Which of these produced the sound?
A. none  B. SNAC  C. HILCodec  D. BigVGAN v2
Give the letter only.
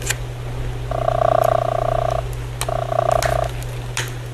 A